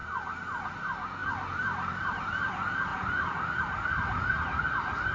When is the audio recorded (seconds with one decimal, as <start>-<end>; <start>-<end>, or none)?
0.0-1.2; 2.2-2.9; 3.6-5.1